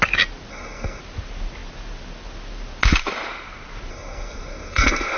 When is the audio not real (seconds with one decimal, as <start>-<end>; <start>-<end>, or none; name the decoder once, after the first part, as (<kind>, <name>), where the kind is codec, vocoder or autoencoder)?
0.5-1.0 (codec, SNAC); 3.9-5.2